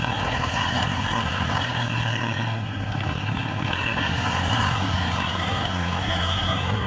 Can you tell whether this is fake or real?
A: fake